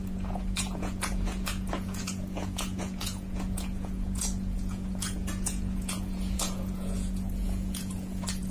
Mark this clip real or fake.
fake